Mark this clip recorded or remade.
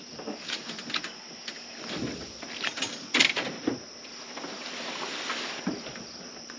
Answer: recorded